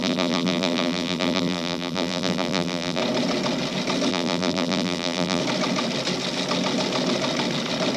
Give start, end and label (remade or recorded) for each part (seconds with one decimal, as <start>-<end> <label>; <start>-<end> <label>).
0.0-3.0 remade; 3.0-4.1 recorded; 4.1-5.4 remade; 5.4-8.0 recorded